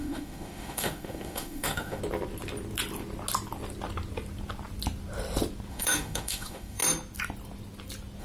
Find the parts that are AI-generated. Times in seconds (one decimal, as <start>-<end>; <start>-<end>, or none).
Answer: 0.0-2.0; 5.7-6.8